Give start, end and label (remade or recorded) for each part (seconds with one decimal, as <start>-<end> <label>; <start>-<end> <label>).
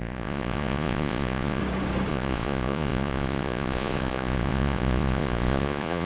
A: 0.0-1.6 remade; 1.6-2.1 recorded; 2.1-6.1 remade